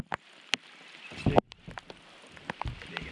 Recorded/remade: recorded